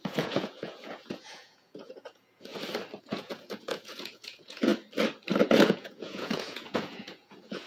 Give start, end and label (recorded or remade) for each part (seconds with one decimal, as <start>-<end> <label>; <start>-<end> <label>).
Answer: 0.0-2.5 remade; 2.5-3.0 recorded; 3.0-4.7 remade; 4.7-5.4 recorded; 5.4-7.7 remade